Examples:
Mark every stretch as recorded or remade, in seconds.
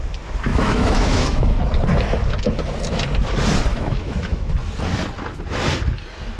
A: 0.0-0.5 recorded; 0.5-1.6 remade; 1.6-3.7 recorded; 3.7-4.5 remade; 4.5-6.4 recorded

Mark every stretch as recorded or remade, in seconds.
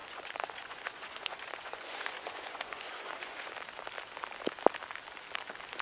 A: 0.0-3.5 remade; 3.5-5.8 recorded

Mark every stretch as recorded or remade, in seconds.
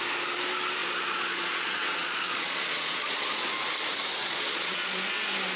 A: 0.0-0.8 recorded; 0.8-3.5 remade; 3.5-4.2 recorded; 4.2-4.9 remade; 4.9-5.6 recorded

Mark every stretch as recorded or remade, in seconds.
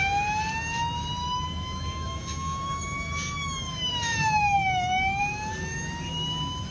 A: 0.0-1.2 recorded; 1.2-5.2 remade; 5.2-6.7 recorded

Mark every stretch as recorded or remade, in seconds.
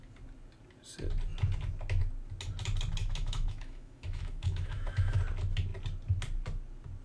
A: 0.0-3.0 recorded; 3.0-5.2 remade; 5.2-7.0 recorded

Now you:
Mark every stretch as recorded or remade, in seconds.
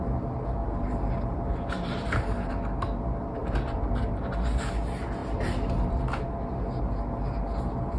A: 0.0-0.6 recorded; 0.6-2.5 remade; 2.5-3.4 recorded; 3.4-4.2 remade; 4.2-5.2 recorded; 5.2-6.0 remade; 6.0-8.0 recorded